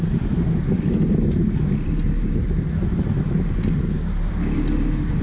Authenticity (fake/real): real